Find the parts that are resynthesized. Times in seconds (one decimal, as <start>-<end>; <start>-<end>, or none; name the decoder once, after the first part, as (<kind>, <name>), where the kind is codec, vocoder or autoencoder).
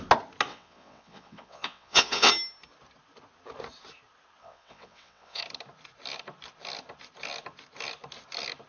0.5-2.3 (vocoder, WaveNeXt); 4.4-5.4